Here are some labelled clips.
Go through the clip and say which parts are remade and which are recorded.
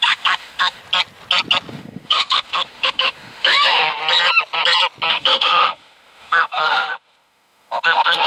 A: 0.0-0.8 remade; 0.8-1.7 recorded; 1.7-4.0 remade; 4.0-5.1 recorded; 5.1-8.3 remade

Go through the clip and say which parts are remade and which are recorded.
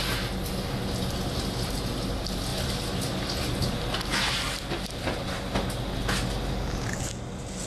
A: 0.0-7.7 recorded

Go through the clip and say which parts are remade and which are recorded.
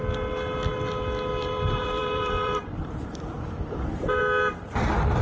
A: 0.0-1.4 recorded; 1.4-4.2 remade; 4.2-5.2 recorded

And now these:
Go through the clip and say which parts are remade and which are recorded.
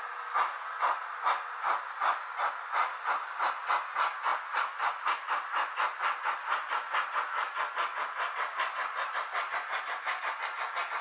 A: 0.0-11.0 recorded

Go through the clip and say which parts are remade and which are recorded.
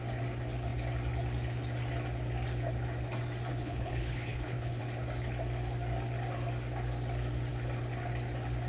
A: 0.0-3.5 recorded; 3.5-4.8 remade; 4.8-8.7 recorded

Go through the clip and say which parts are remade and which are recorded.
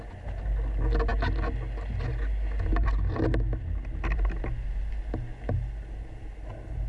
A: 0.0-6.9 recorded